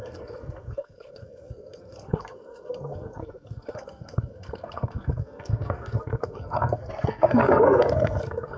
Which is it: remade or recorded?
remade